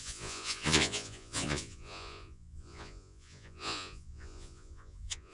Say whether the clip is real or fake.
fake